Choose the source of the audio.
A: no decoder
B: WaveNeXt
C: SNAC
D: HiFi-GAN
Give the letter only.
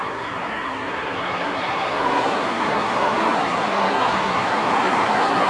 C